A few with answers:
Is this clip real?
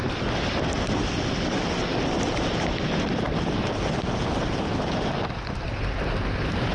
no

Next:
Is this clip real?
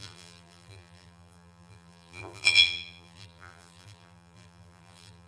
no